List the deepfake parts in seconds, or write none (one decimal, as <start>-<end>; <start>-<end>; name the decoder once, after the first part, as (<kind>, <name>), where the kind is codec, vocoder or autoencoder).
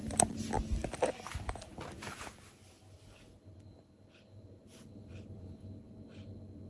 4.6-5.4 (vocoder, BigVGAN v2)